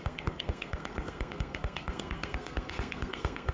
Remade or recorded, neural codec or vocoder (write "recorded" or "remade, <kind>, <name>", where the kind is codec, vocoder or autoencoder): remade, codec, SNAC